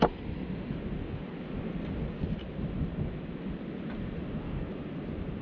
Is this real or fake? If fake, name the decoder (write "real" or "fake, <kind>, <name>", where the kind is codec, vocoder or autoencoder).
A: real